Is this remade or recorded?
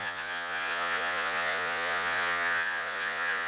remade